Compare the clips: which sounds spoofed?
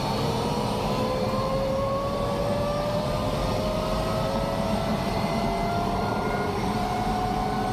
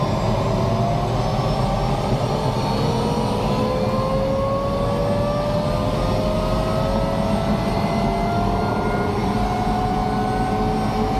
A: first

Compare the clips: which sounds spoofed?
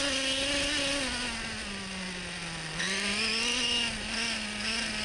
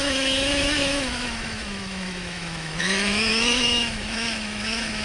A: second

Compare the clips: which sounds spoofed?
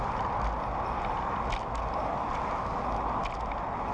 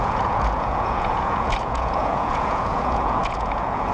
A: second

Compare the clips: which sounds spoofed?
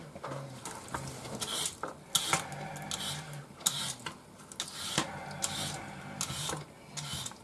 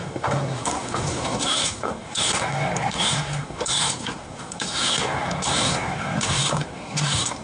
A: second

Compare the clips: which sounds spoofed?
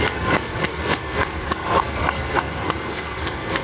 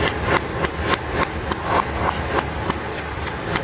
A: first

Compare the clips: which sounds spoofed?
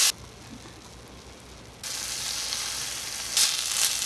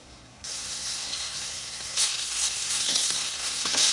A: second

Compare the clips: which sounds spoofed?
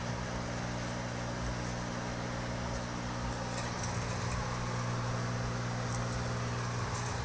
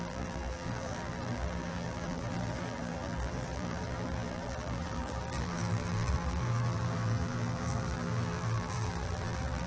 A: second